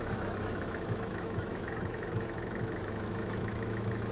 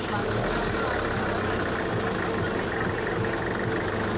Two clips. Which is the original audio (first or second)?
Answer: second